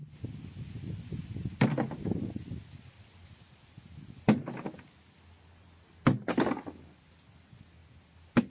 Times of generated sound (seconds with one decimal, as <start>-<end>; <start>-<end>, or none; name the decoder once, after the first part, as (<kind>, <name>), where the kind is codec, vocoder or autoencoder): none